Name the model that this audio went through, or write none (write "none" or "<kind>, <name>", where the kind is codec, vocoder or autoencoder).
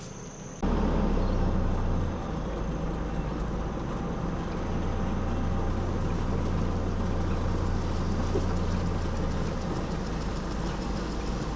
none